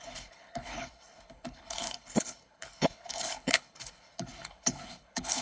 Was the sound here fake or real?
fake